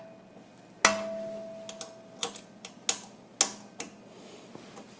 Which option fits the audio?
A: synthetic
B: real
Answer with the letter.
B